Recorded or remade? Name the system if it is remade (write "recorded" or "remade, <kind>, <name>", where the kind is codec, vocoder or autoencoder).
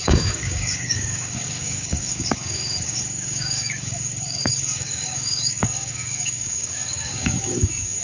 remade, codec, DAC